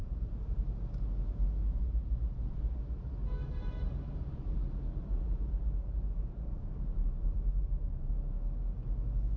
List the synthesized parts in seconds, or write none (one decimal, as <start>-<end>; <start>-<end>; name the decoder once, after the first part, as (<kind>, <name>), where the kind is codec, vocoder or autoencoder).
0.0-0.6 (vocoder, BigVGAN v2); 1.6-2.6; 3.2-8.2